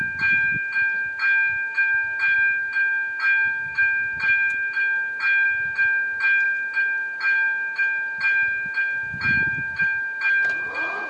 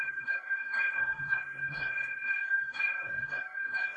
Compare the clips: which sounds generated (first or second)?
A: second